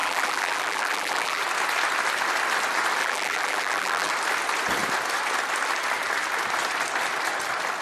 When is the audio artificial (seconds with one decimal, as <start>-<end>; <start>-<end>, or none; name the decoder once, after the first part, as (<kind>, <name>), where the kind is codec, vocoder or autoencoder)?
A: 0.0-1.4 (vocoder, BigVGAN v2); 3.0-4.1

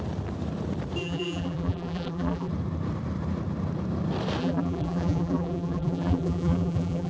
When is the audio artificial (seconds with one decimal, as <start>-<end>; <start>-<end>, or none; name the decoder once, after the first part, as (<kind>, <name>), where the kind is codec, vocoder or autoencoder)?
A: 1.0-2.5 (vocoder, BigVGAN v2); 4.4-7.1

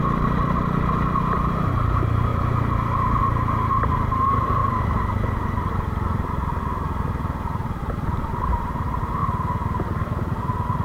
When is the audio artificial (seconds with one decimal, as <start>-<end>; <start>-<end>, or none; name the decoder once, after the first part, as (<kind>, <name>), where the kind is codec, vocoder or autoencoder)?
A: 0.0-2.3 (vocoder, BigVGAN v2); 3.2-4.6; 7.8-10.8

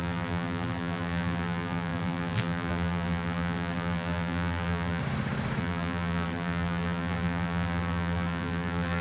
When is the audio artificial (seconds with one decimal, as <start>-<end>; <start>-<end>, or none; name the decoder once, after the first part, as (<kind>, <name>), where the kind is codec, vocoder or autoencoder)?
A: 0.0-5.0 (vocoder, BigVGAN v2); 5.6-9.0

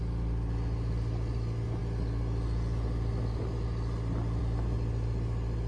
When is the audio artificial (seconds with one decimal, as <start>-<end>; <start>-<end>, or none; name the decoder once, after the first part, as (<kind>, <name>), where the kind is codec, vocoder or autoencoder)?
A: none

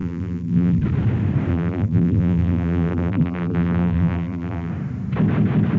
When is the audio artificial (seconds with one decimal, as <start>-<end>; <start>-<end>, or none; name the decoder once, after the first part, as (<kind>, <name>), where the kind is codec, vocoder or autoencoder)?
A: 0.0-0.8 (vocoder, BigVGAN v2); 1.5-4.7